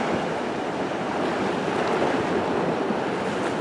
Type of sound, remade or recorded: recorded